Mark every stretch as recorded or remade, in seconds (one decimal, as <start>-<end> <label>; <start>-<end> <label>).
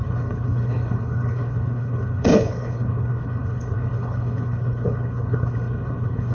0.0-6.3 remade